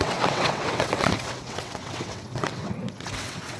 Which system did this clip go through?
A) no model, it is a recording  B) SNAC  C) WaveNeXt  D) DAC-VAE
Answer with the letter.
C